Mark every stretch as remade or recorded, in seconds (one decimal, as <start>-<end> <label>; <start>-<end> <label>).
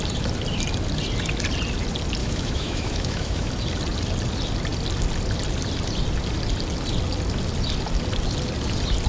0.0-2.2 recorded; 2.2-3.5 remade; 3.5-9.1 recorded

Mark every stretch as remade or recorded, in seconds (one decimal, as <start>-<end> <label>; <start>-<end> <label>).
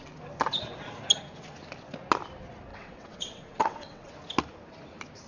0.0-2.7 recorded; 2.7-4.1 remade; 4.1-5.3 recorded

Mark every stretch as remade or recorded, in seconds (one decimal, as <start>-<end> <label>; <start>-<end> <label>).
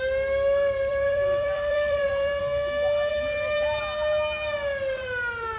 0.0-0.9 recorded; 0.9-2.4 remade; 2.4-3.1 recorded; 3.1-3.8 remade; 3.8-5.6 recorded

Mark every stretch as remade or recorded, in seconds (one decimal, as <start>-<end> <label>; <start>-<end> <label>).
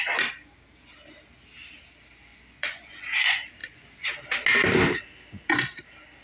0.0-2.3 recorded; 2.3-3.0 remade; 3.0-3.6 recorded; 3.6-4.1 remade; 4.1-6.2 recorded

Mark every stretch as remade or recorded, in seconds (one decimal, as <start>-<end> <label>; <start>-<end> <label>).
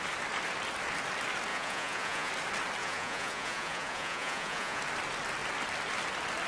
0.0-1.5 recorded; 1.5-2.3 remade; 2.3-2.8 recorded; 2.8-4.8 remade; 4.8-6.5 recorded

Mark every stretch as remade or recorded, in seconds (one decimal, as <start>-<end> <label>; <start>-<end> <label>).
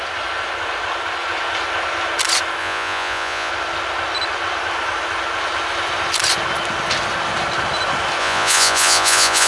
0.0-2.6 recorded; 2.6-3.5 remade; 3.5-8.2 recorded; 8.2-9.5 remade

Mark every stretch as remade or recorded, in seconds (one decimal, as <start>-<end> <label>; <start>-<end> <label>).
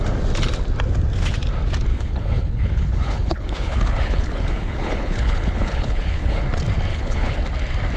0.0-1.9 recorded; 1.9-6.4 remade; 6.4-6.9 recorded; 6.9-7.4 remade; 7.4-8.0 recorded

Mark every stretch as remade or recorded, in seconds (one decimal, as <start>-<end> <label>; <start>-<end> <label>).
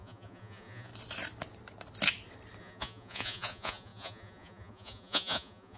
0.0-0.9 remade; 0.9-2.6 recorded; 2.6-5.8 remade